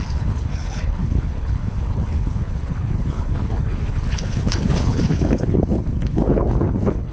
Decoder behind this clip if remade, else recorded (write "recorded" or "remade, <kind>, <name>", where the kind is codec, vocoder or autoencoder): remade, codec, HILCodec